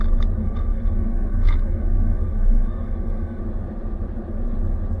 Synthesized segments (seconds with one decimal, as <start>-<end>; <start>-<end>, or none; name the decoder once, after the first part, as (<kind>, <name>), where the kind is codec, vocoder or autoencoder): 0.4-3.4 (codec, SNAC)